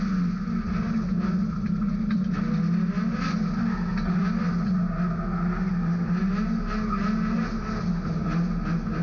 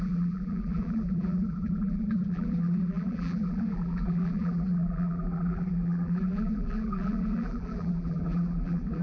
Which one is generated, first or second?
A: second